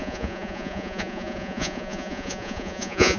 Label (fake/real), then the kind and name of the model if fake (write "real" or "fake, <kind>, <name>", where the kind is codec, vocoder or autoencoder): fake, vocoder, Vocos